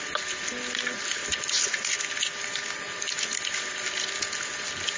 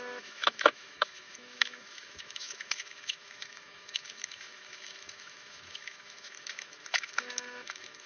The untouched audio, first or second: first